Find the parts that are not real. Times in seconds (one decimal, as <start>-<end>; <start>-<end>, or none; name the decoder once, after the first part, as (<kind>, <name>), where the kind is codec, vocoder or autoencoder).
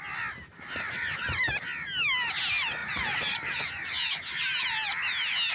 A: none